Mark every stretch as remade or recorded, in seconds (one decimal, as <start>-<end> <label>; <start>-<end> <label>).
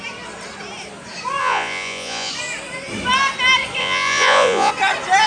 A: 0.0-1.4 recorded; 1.4-2.3 remade; 2.3-3.8 recorded; 3.8-4.7 remade; 4.7-5.3 recorded